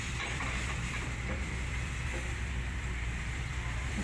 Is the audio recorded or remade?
remade